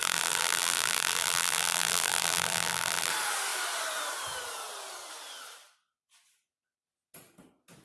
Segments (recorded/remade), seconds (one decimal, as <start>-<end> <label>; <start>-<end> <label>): 0.0-3.1 remade; 3.1-7.8 recorded